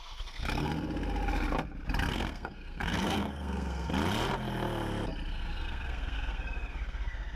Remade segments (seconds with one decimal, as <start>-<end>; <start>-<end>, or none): 0.0-0.7; 2.1-3.9; 5.3-7.4